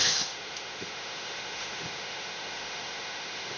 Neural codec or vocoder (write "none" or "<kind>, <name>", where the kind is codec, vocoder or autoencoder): autoencoder, DAC-VAE